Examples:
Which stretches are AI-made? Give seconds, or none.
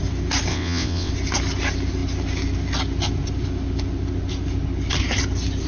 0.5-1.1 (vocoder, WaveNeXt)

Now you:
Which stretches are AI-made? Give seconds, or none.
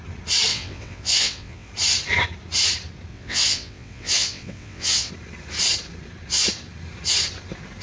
0.5-1.7 (vocoder, WaveNeXt); 3.1-5.1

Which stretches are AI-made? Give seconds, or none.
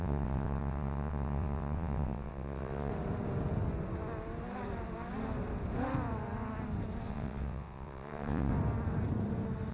0.0-2.9 (vocoder, WaveNeXt); 7.1-8.5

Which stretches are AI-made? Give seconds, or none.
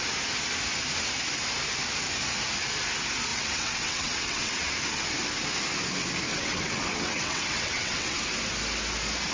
3.3-4.7 (vocoder, WaveNeXt); 6.3-8.2